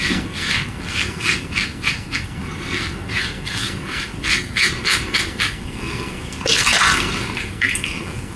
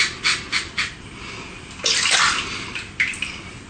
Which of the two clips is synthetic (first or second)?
first